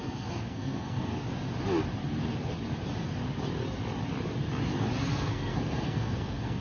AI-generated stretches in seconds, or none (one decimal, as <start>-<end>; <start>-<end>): 0.0-1.1; 5.1-6.6